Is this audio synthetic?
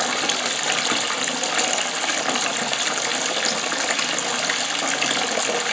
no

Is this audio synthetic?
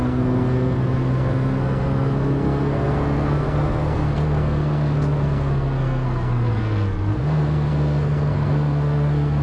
yes